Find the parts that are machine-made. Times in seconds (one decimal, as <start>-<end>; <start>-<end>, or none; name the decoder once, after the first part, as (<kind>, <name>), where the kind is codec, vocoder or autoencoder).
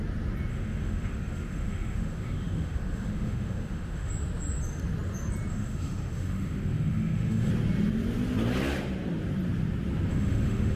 0.5-4.1 (autoencoder, DAC-VAE); 5.5-7.5; 10.1-10.8